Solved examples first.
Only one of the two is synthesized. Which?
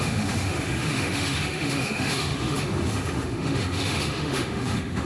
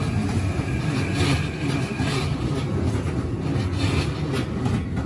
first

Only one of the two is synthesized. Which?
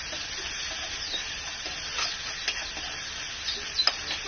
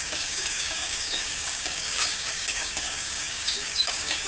second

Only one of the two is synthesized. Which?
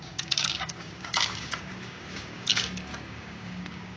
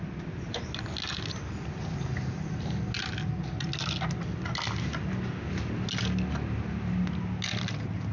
first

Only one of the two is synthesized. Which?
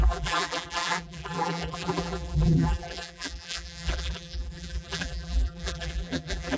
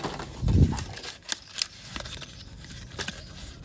first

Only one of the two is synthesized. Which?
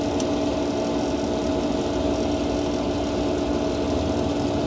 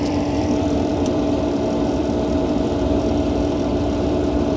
second